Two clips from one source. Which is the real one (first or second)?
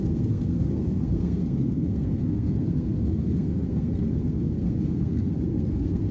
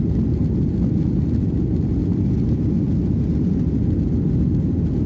second